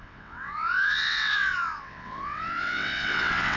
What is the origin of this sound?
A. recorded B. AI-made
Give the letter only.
B